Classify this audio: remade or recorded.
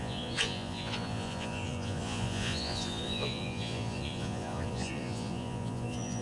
remade